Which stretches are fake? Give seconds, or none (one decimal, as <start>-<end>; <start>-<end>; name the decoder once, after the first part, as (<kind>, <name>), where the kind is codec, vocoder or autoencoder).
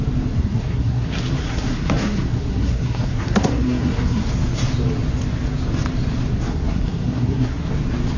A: 0.4-4.3 (codec, SNAC); 6.5-7.7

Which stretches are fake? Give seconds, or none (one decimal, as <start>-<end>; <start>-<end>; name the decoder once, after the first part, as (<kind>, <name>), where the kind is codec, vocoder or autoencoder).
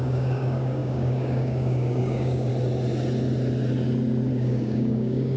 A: 0.0-2.5 (codec, DAC); 4.3-5.4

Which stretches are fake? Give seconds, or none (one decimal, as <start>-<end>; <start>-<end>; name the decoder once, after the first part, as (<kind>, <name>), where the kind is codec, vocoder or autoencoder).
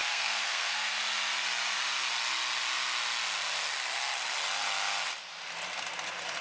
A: 0.0-1.0 (codec, SNAC)